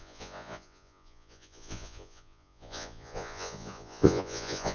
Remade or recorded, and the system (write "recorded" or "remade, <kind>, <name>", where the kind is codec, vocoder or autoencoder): remade, vocoder, Vocos